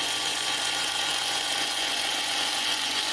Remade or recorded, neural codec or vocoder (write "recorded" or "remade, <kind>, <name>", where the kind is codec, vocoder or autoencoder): remade, vocoder, Vocos